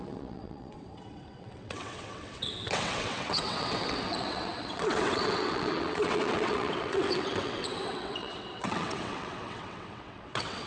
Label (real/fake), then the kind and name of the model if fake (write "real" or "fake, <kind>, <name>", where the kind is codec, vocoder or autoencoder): fake, vocoder, WaveNeXt